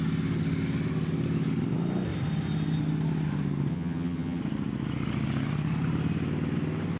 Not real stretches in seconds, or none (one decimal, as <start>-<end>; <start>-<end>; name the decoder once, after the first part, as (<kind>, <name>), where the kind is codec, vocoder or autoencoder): 3.7-4.4 (vocoder, HiFi-GAN)